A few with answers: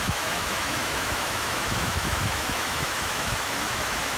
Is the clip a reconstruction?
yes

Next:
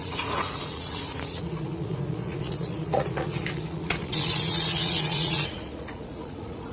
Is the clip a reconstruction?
yes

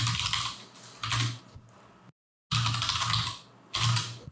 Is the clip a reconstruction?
no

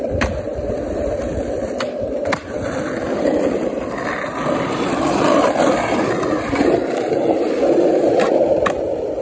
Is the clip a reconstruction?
yes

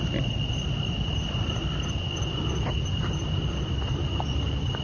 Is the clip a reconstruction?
no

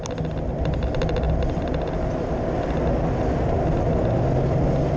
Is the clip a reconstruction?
no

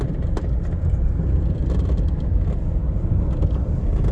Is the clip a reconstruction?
no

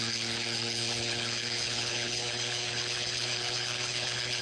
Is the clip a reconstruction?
yes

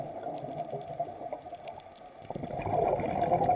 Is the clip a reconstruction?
no